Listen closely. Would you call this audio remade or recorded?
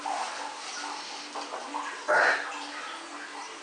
recorded